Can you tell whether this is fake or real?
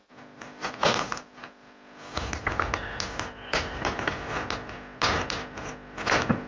real